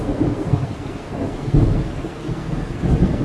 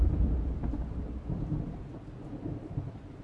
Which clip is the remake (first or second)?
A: first